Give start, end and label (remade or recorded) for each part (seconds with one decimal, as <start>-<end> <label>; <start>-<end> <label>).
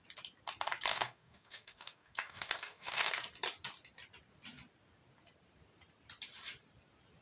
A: 0.0-0.9 recorded; 0.9-3.1 remade; 3.1-7.2 recorded